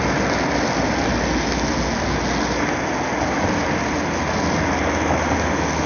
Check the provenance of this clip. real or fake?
real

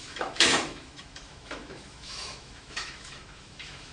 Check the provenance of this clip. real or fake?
fake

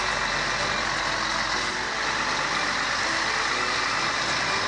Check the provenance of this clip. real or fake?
real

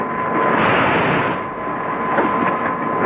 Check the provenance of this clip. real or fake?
real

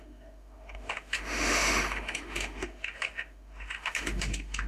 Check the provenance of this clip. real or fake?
fake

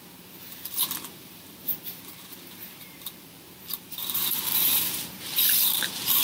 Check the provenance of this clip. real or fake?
fake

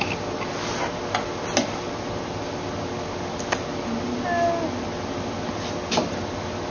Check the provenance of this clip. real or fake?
real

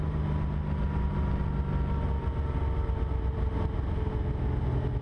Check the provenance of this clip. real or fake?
real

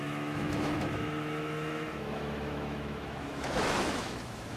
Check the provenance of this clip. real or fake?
fake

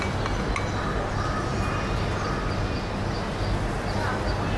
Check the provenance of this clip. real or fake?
real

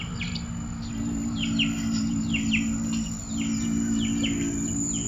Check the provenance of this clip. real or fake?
real